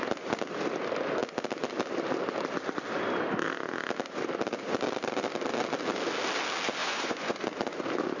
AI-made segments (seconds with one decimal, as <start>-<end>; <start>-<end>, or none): 6.8-7.4